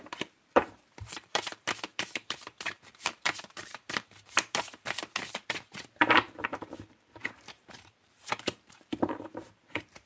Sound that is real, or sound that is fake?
fake